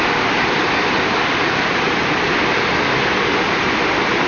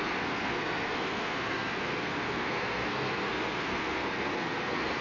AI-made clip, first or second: second